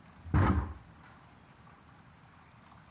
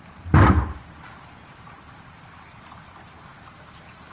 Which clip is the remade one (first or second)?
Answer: second